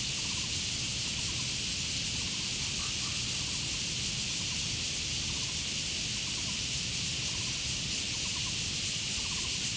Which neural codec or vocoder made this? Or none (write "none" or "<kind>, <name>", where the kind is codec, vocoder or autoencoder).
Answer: none